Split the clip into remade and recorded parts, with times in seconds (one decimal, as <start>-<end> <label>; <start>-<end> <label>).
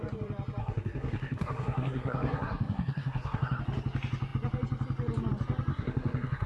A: 0.0-0.6 recorded; 0.6-3.6 remade; 3.6-5.7 recorded; 5.7-6.5 remade